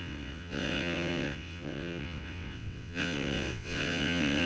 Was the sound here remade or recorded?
remade